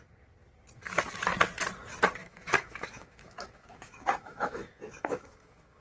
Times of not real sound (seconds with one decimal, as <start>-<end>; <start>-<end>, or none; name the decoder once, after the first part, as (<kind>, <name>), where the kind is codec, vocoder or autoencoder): 2.2-5.8 (autoencoder, DAC-VAE)